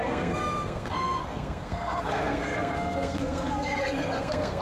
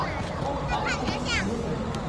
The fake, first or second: first